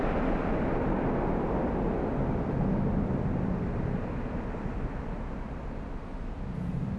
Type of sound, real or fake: real